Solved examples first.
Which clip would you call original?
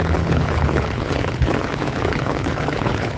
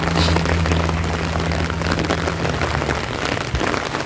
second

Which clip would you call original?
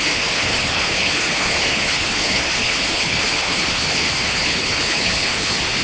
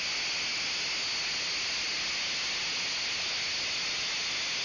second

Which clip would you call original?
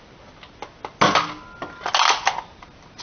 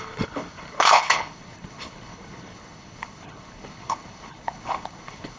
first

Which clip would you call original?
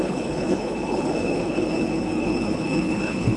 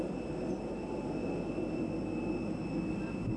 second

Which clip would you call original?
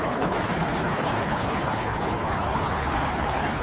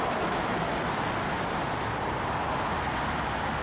second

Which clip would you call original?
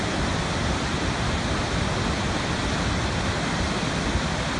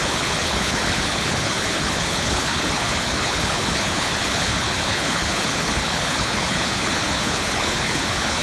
first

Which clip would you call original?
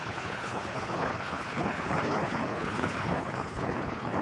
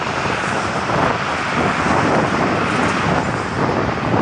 second